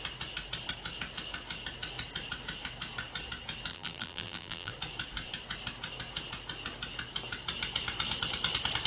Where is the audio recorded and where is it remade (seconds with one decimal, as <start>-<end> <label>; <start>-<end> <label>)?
0.0-3.7 recorded; 3.7-4.7 remade; 4.7-8.9 recorded